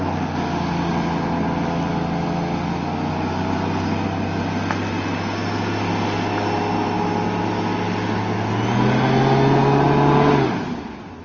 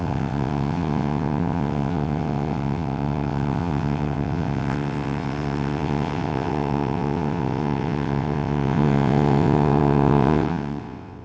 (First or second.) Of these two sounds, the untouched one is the first